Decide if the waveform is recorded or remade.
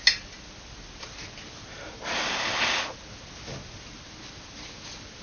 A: recorded